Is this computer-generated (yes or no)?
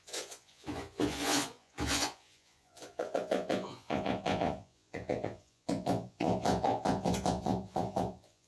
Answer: yes